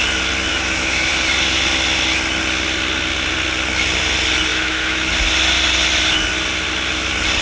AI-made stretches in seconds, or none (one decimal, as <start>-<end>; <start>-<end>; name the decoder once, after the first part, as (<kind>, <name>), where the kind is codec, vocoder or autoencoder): 0.5-1.1 (autoencoder, DAC-VAE); 4.5-5.1